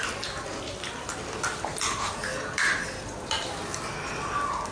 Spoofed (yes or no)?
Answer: no